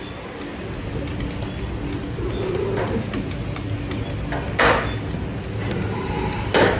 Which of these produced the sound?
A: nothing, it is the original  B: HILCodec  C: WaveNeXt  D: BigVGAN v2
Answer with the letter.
A